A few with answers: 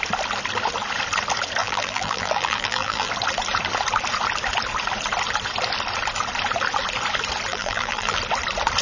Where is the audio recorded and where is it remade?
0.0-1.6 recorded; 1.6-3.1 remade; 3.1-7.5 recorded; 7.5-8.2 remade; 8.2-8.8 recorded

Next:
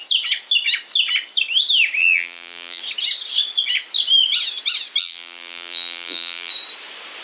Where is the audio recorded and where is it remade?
0.0-2.0 recorded; 2.0-2.8 remade; 2.8-5.0 recorded; 5.0-6.5 remade; 6.5-7.2 recorded

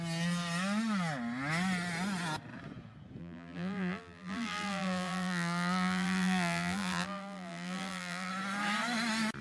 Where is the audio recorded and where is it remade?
0.0-3.2 recorded; 3.2-8.3 remade; 8.3-9.4 recorded

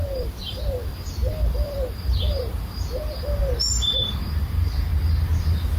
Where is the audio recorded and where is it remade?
0.0-4.9 remade; 4.9-5.8 recorded

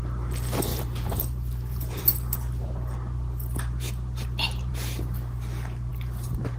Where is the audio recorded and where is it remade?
0.0-0.7 recorded; 0.7-4.7 remade; 4.7-6.6 recorded